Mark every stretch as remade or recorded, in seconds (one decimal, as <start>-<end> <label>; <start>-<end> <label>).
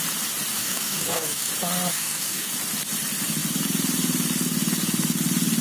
0.0-0.5 recorded; 0.5-1.5 remade; 1.5-1.9 recorded; 1.9-2.5 remade; 2.5-5.6 recorded